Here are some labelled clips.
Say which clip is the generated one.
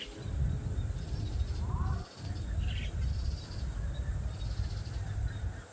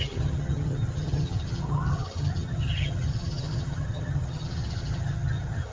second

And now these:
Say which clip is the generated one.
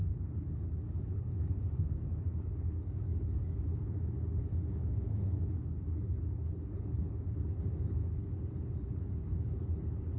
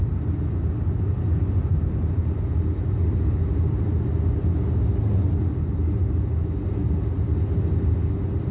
first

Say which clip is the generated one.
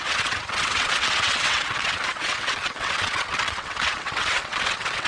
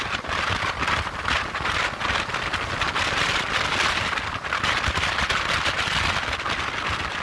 first